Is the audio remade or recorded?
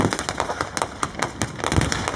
recorded